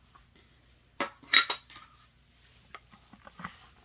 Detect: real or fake real